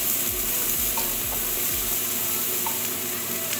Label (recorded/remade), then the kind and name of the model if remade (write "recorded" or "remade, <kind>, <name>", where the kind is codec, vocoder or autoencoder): recorded